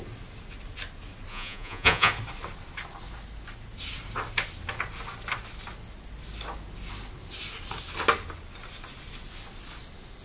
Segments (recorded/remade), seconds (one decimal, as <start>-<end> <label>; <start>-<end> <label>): 0.0-1.3 recorded; 1.3-2.1 remade; 2.1-10.2 recorded

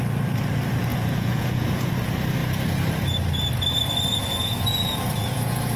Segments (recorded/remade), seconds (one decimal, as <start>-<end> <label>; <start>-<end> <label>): 0.0-0.9 recorded; 0.9-1.9 remade; 1.9-4.1 recorded; 4.1-5.8 remade

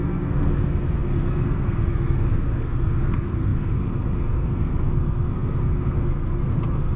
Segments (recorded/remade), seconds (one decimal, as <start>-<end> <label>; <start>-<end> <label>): 0.0-7.0 remade